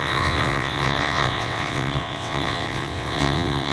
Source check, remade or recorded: remade